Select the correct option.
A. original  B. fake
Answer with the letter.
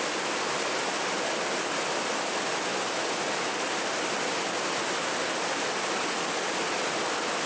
A